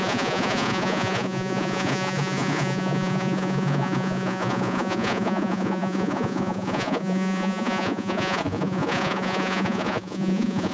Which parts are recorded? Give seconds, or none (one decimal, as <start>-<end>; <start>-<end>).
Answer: none